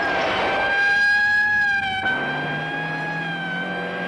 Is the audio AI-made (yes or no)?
no